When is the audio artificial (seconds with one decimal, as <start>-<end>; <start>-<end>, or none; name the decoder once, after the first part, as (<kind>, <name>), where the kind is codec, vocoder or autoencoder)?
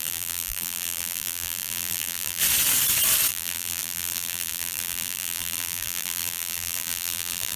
0.0-2.4 (vocoder, BigVGAN v2); 3.3-7.6